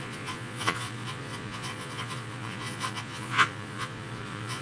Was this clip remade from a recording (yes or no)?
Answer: yes